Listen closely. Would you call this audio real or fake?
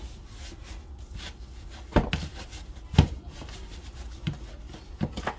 real